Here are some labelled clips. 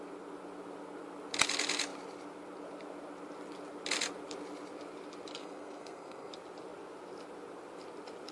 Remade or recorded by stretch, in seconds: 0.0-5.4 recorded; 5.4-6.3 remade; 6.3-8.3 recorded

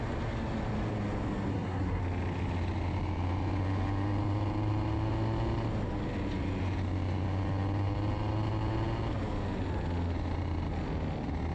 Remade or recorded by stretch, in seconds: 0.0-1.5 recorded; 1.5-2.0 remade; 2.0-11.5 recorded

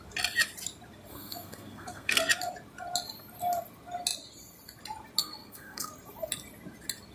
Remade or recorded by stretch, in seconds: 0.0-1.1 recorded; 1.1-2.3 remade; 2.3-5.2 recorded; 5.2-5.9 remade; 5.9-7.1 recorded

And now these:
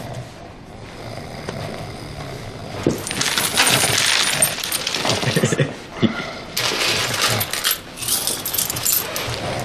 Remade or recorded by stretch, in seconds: 0.0-9.6 recorded

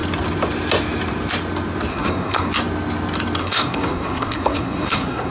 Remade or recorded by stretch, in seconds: 0.0-1.9 recorded; 1.9-2.5 remade; 2.5-3.4 recorded; 3.4-5.3 remade

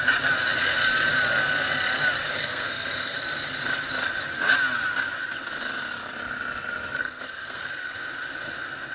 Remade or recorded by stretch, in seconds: 0.0-2.4 recorded; 2.4-3.2 remade; 3.2-7.0 recorded; 7.0-7.6 remade; 7.6-8.9 recorded